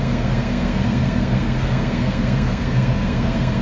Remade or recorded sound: remade